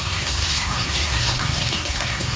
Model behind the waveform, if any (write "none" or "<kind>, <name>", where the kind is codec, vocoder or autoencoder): codec, SNAC